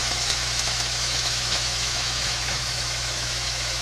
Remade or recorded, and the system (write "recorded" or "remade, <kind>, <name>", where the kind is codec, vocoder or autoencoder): remade, autoencoder, DAC-VAE